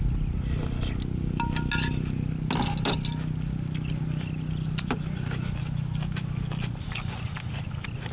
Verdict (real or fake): real